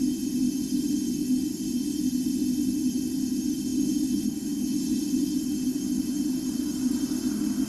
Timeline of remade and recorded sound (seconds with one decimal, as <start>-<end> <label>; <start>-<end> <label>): 0.0-7.7 recorded